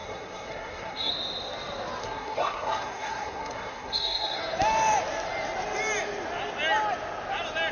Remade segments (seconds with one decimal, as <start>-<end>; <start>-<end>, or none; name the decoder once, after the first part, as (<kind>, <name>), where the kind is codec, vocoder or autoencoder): 0.0-1.1 (codec, SNAC); 2.0-4.4